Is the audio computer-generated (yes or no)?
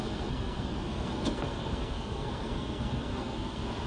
yes